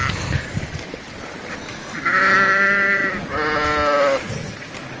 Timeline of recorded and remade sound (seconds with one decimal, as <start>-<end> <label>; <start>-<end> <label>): 0.0-1.7 recorded; 1.7-2.3 remade; 2.3-5.0 recorded